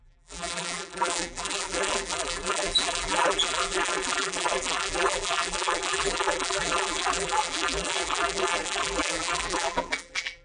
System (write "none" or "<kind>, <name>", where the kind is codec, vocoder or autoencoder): vocoder, BigVGAN v2